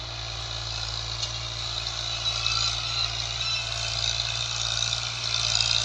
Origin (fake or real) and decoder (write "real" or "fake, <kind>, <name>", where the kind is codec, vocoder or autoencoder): real